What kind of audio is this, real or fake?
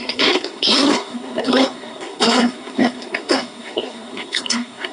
fake